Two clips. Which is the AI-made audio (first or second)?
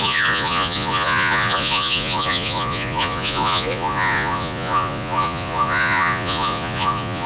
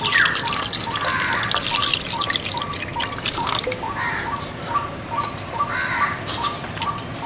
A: first